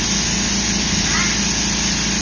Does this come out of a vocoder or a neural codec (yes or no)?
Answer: no